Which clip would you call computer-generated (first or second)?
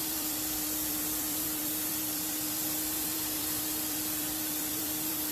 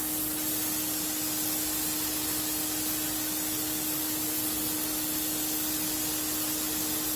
first